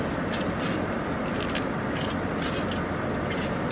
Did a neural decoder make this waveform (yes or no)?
no